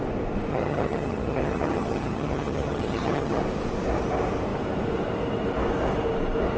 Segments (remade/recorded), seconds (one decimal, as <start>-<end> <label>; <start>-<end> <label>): 0.0-0.5 recorded; 0.5-3.4 remade; 3.4-6.6 recorded